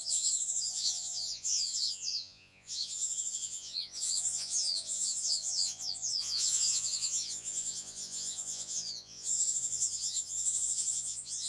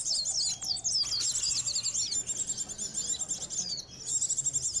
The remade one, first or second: first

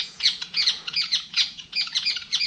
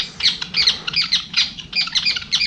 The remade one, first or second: first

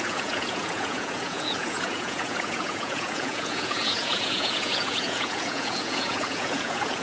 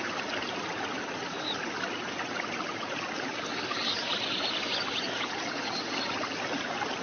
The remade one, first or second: first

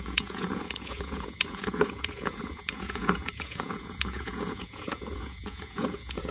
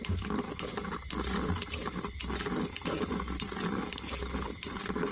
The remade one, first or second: first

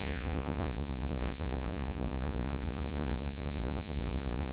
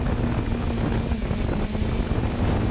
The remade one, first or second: first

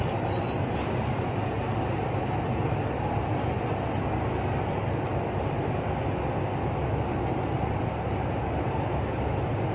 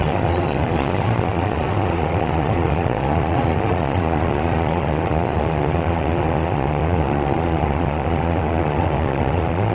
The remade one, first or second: second